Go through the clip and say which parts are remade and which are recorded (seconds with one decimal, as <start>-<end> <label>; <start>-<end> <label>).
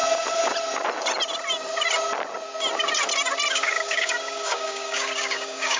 0.0-3.5 recorded; 3.5-5.8 remade